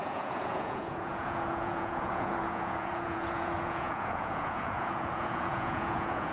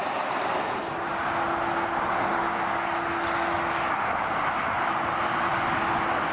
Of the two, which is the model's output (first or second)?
first